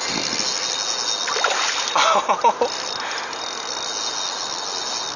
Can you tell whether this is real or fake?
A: real